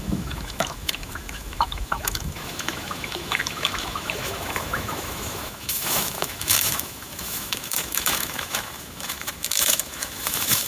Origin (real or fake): fake